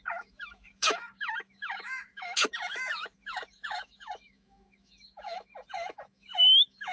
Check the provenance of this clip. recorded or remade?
remade